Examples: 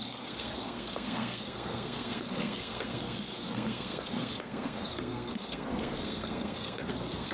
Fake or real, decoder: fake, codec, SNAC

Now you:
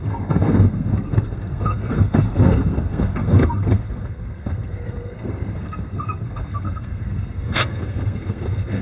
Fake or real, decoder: fake, codec, SNAC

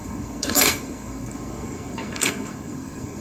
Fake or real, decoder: fake, codec, SNAC